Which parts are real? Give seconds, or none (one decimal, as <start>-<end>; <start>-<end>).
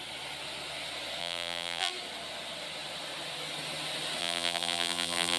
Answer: 0.0-1.2; 1.9-4.2